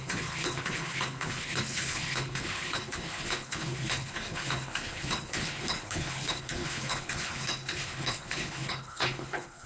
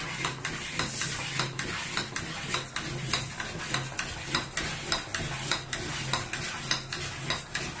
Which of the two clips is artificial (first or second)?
first